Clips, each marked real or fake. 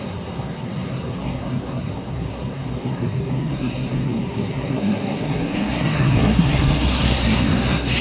fake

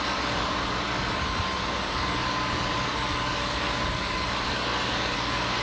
fake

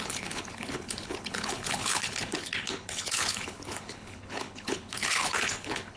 fake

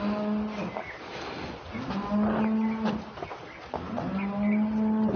real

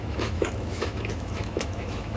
fake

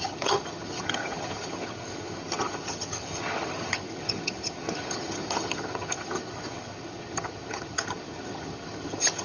fake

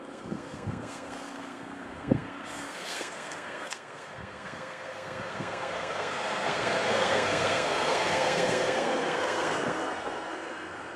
fake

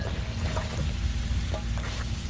real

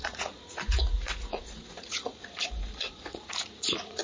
fake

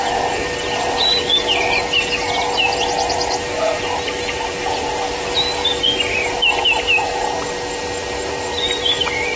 real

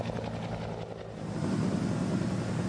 real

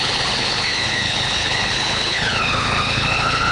fake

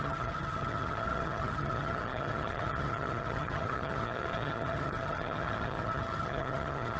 fake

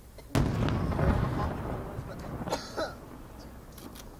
real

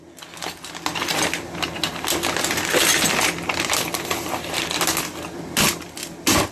real